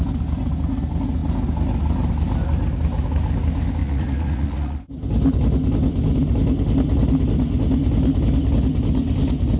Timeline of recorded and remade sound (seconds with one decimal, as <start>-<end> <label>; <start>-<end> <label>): 0.0-3.8 recorded; 3.8-4.8 remade; 4.8-9.6 recorded